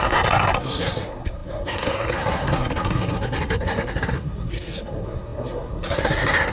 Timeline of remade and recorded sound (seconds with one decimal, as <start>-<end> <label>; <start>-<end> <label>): 0.0-6.5 remade